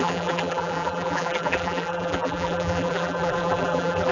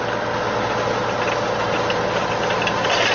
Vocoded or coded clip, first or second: first